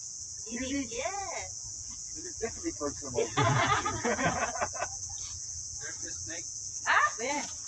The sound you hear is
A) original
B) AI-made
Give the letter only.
B